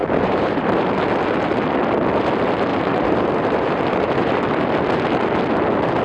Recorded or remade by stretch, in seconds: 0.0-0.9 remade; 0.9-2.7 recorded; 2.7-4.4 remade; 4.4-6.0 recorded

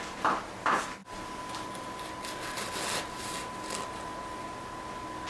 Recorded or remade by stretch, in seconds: 0.0-5.3 recorded